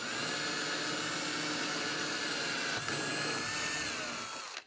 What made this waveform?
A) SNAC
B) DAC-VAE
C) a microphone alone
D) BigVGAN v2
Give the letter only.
C